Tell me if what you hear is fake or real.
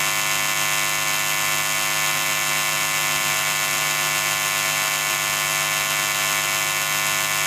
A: real